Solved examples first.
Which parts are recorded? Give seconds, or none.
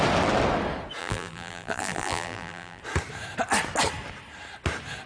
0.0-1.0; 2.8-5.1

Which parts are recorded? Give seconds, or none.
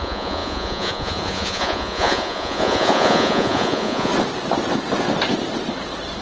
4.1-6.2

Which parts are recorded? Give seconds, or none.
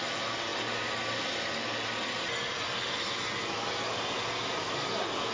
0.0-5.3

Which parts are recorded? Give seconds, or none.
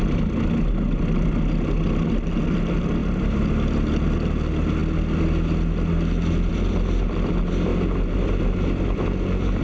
0.0-3.0; 3.5-9.6